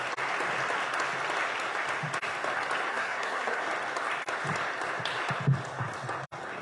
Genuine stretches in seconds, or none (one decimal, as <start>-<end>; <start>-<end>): 0.0-2.9; 3.6-6.6